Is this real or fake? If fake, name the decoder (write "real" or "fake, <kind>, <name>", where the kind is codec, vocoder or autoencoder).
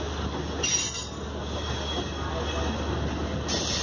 real